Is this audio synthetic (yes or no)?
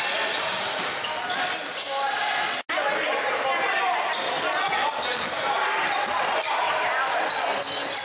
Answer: no